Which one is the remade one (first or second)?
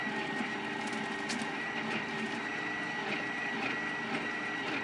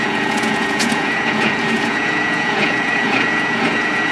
second